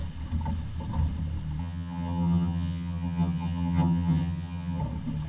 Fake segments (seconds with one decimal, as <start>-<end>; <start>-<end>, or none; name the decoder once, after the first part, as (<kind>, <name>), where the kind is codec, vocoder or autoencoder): 1.6-4.8 (vocoder, HiFi-GAN)